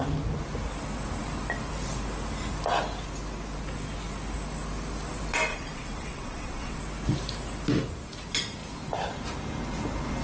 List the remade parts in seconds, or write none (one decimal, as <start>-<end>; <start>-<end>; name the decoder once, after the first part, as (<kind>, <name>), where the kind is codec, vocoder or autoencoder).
5.5-6.8 (vocoder, WaveNeXt)